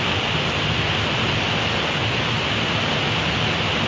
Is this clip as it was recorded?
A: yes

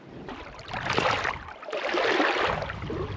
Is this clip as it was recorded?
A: yes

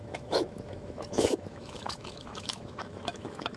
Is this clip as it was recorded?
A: no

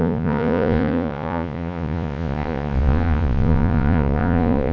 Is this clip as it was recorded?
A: no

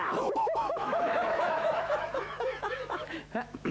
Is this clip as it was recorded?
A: no